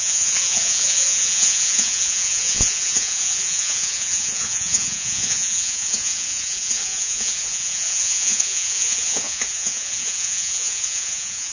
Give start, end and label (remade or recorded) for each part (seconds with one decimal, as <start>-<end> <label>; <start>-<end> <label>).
0.0-11.5 remade